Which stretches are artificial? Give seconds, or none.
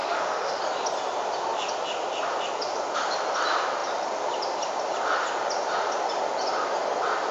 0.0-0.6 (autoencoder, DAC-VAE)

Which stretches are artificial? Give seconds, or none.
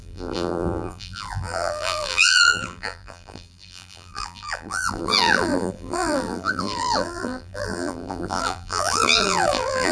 0.0-9.9 (vocoder, BigVGAN v2)